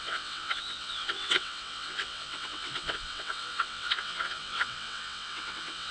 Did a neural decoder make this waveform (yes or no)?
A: yes